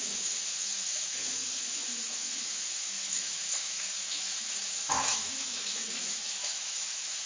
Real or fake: fake